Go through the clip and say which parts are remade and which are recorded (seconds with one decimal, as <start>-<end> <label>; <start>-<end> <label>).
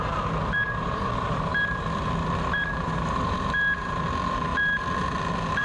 0.0-1.5 remade; 1.5-2.4 recorded; 2.4-4.5 remade; 4.5-5.6 recorded